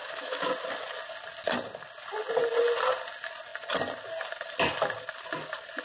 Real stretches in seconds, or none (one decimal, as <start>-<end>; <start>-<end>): 0.5-5.8